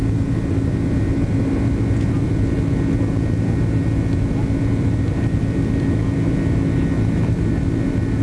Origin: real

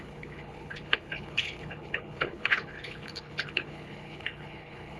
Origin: fake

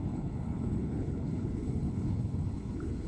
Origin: fake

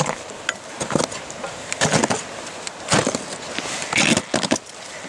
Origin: real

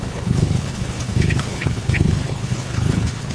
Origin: fake